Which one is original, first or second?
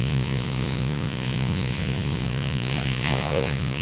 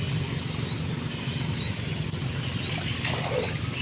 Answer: second